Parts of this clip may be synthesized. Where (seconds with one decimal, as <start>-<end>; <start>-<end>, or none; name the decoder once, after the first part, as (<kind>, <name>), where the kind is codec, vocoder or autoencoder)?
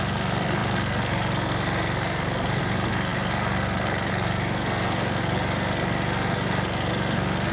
0.0-7.5 (codec, SNAC)